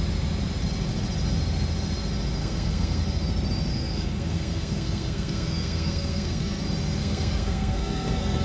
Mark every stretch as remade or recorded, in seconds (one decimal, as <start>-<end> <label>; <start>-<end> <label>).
0.0-2.4 recorded; 2.4-3.0 remade; 3.0-3.7 recorded; 3.7-6.6 remade; 6.6-7.0 recorded; 7.0-8.4 remade